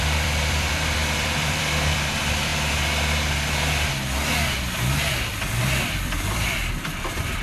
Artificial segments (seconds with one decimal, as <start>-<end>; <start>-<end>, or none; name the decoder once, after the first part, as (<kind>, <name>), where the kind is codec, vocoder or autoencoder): 0.0-2.5 (vocoder, BigVGAN v2); 5.6-7.4